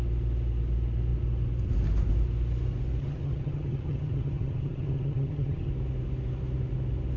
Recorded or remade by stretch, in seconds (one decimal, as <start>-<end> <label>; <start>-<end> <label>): 0.0-3.0 recorded; 3.0-5.7 remade; 5.7-7.2 recorded